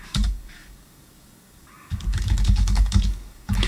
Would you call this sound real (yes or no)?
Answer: no